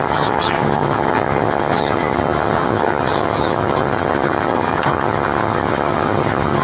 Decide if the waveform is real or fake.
fake